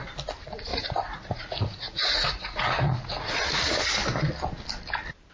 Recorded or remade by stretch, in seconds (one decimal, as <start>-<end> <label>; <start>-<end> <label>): 0.0-0.7 recorded; 0.7-3.9 remade; 3.9-5.3 recorded